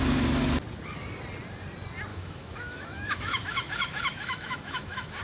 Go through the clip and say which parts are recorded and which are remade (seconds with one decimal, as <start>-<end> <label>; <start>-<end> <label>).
0.0-2.1 recorded; 2.1-5.2 remade